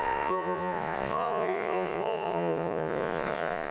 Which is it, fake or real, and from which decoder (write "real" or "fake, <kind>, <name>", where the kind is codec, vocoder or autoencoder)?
fake, vocoder, Vocos